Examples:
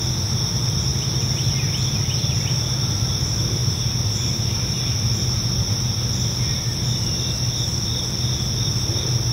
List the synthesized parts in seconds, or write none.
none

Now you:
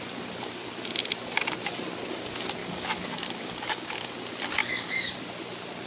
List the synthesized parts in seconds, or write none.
2.6-4.1 (codec, DAC); 4.6-5.1

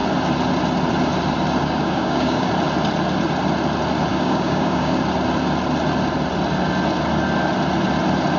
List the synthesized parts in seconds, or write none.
1.6-2.5 (codec, DAC); 4.1-5.0

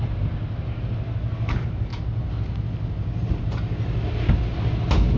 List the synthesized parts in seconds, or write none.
none

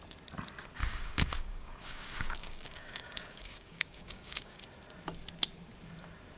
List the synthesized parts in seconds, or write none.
0.8-4.6 (codec, DAC)

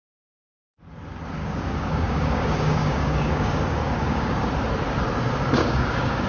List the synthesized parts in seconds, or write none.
1.4-4.5 (codec, DAC); 5.6-6.3